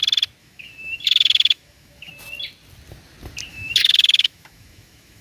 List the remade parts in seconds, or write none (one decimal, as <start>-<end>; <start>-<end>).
0.4-2.1; 3.5-5.2